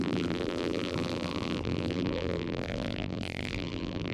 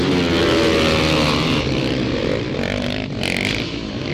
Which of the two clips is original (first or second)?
second